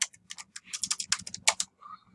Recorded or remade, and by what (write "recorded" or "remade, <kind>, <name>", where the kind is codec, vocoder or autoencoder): recorded